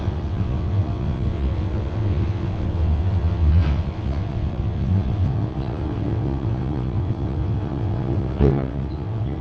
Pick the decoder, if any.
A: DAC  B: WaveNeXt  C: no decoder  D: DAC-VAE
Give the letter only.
B